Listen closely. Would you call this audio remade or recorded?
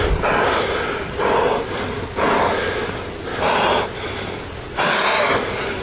recorded